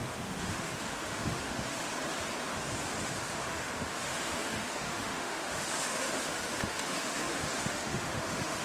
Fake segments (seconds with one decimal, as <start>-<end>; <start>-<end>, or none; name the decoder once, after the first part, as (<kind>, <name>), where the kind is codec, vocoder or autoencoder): 0.0-1.9 (autoencoder, DAC-VAE); 3.0-8.6